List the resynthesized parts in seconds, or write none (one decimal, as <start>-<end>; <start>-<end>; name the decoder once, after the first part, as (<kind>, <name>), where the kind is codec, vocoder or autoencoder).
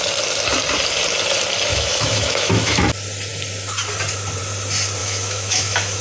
1.7-2.9 (autoencoder, DAC-VAE); 5.0-6.0